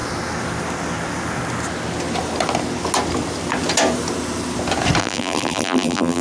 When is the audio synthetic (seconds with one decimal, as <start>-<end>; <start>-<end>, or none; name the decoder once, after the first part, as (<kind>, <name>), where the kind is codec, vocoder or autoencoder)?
5.0-6.2 (vocoder, BigVGAN v2)